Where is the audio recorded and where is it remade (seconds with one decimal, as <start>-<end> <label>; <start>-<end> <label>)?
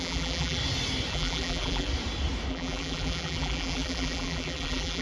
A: 0.0-0.6 remade; 0.6-1.1 recorded; 1.1-1.9 remade; 1.9-2.5 recorded; 2.5-5.0 remade